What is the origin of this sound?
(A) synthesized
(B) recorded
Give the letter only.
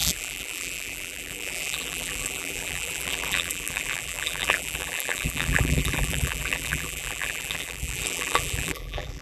A